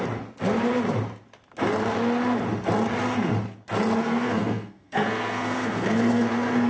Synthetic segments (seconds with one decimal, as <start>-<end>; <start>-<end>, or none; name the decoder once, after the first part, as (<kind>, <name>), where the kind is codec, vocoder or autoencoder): 4.0-6.7 (codec, SNAC)

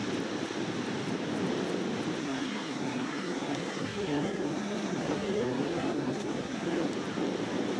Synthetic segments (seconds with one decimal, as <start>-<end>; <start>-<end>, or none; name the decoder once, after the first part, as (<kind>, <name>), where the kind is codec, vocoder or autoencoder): 2.2-6.9 (codec, SNAC)

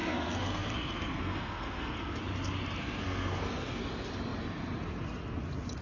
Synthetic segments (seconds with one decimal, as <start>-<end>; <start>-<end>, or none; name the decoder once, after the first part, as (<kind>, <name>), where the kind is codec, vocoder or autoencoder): 0.0-2.2 (codec, SNAC); 2.8-3.8

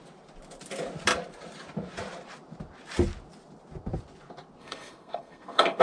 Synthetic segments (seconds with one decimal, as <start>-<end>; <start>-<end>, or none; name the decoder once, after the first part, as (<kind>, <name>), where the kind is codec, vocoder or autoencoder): 4.6-5.8 (codec, SNAC)